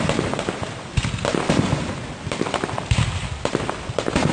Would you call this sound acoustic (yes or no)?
no